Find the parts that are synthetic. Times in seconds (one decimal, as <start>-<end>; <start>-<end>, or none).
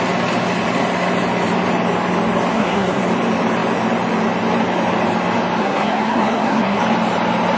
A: 2.5-3.0; 5.6-6.8